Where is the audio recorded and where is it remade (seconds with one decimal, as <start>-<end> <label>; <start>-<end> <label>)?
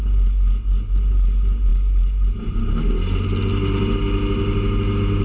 0.0-5.2 recorded